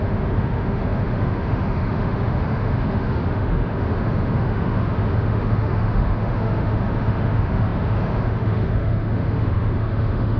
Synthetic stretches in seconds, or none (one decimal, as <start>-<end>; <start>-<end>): 0.0-10.4